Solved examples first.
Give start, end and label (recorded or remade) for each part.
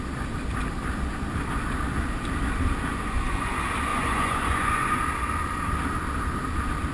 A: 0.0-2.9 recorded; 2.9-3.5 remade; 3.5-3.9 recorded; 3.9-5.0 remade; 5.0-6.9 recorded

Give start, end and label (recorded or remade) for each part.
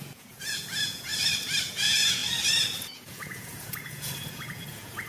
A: 0.0-1.1 remade; 1.1-1.7 recorded; 1.7-2.2 remade; 2.2-2.8 recorded; 2.8-5.1 remade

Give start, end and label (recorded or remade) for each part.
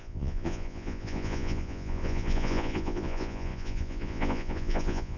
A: 0.0-5.2 remade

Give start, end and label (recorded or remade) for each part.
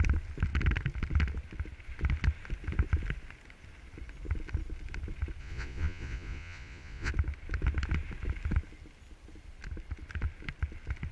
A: 0.0-5.4 recorded; 5.4-7.1 remade; 7.1-11.1 recorded